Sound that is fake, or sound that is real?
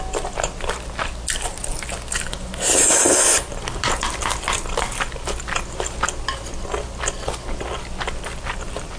real